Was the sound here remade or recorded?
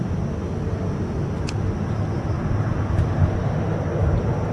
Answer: recorded